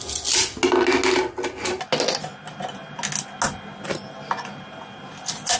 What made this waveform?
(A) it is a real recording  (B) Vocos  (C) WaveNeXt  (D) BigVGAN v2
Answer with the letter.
A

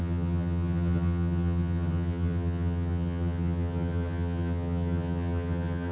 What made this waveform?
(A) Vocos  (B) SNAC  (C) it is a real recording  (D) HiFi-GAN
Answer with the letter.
D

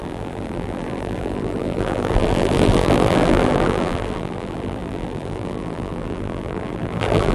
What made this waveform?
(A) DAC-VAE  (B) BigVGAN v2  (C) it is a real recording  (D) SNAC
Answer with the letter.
B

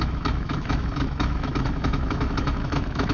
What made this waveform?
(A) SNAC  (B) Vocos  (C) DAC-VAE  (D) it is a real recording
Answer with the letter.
C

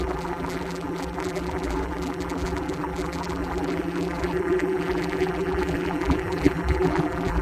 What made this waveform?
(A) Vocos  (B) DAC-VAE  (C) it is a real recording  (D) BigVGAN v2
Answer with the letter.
D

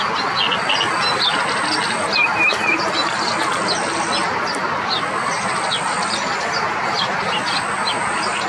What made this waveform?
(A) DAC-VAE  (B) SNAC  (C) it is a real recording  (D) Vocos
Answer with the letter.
C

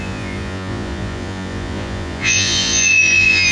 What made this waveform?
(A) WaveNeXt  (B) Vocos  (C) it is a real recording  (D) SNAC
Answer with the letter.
B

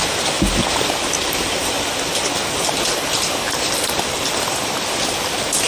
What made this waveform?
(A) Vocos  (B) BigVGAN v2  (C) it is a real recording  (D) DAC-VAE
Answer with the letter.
C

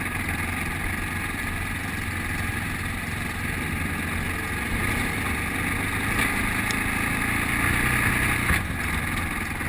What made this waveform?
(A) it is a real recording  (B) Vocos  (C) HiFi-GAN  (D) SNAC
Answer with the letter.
A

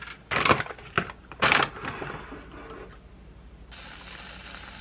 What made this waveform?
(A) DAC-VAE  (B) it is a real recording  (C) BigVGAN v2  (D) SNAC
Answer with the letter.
B